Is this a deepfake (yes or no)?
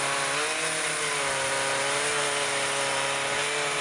no